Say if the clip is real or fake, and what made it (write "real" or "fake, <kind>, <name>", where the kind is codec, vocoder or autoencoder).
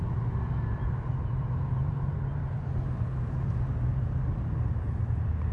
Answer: real